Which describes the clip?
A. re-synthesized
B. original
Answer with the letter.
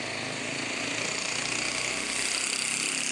B